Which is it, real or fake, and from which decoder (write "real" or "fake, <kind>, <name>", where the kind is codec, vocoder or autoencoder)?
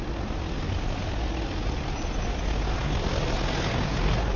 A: real